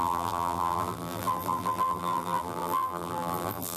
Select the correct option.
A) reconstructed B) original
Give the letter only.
A